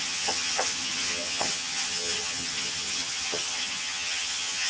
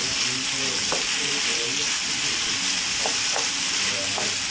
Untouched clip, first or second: second